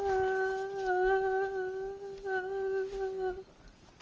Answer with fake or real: real